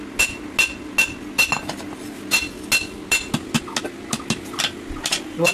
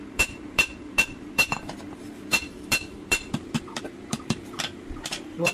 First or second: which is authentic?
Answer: first